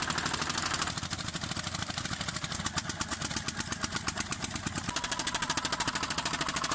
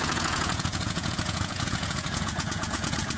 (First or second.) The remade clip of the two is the second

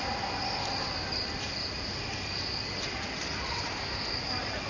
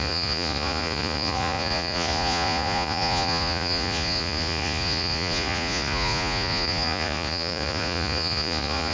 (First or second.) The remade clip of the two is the second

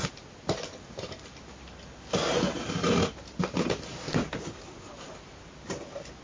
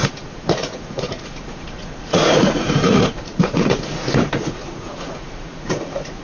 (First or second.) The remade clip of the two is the second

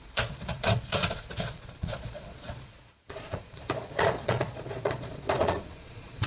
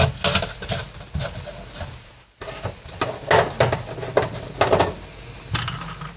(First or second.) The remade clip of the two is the first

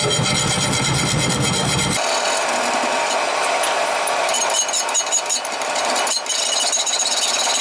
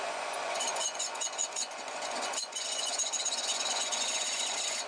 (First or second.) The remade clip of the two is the second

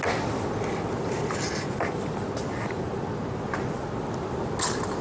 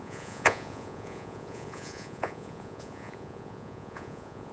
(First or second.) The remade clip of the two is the second